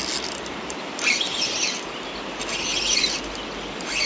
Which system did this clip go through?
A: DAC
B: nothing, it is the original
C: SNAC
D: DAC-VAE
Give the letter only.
B